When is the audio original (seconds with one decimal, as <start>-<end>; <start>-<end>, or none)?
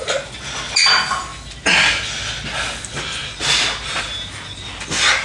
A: 0.0-5.2